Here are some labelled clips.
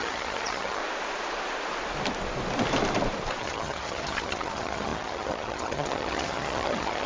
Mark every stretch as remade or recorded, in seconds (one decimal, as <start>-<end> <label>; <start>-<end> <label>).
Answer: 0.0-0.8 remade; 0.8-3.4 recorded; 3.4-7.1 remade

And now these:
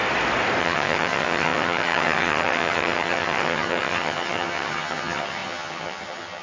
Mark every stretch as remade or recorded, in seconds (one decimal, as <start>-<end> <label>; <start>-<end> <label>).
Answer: 0.0-0.6 recorded; 0.6-6.4 remade

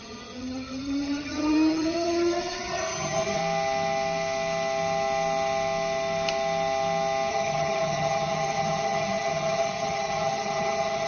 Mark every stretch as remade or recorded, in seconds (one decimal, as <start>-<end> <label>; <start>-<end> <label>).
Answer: 0.0-3.4 remade; 3.4-7.3 recorded; 7.3-11.1 remade

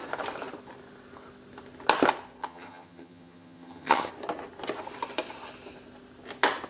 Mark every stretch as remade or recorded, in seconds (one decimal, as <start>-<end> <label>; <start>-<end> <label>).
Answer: 0.0-2.4 recorded; 2.4-4.1 remade; 4.1-6.7 recorded

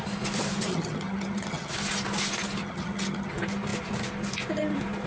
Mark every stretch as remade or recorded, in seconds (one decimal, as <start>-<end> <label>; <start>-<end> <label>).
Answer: 0.0-0.7 recorded; 0.7-1.7 remade; 1.7-2.6 recorded; 2.6-3.3 remade; 3.3-5.1 recorded

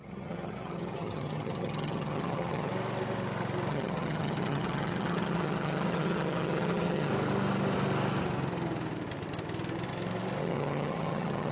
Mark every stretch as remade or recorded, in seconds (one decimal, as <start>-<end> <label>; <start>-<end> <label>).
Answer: 0.0-2.7 remade; 2.7-3.7 recorded; 3.7-7.1 remade; 7.1-10.4 recorded; 10.4-11.5 remade

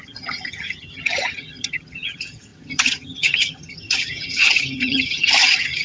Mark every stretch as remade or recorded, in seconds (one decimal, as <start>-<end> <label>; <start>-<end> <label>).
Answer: 0.0-5.8 remade

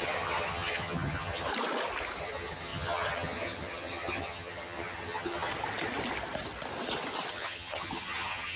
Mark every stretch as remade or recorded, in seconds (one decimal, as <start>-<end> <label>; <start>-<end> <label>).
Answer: 0.0-1.5 remade; 1.5-2.2 recorded; 2.2-5.5 remade; 5.5-7.3 recorded; 7.3-8.6 remade